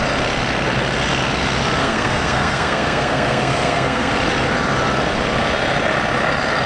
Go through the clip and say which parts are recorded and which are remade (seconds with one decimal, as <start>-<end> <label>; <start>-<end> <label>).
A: 0.0-1.8 recorded; 1.8-4.1 remade; 4.1-6.7 recorded